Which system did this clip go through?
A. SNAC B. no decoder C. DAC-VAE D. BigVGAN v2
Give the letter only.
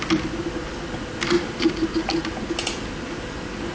B